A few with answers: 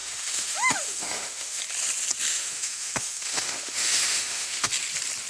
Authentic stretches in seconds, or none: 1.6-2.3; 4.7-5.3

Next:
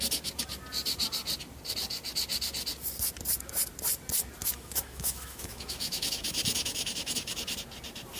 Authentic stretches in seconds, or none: 0.0-4.4; 7.3-8.2

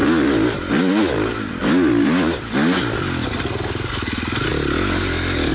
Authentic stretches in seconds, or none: 0.0-5.5

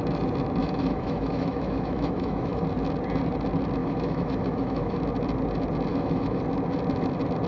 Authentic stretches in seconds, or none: 0.0-0.6; 2.6-3.8; 5.0-5.9; 6.4-7.5

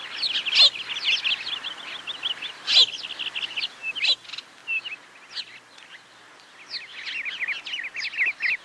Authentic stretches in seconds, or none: 0.0-8.6

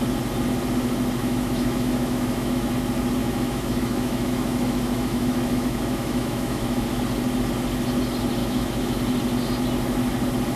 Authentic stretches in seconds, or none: 0.0-1.2; 2.7-3.2; 7.0-8.4; 9.0-10.6

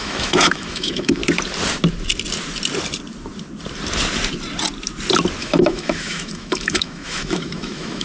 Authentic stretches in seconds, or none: 1.2-5.4